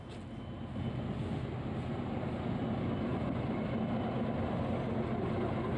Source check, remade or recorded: recorded